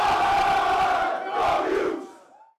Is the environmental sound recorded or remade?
recorded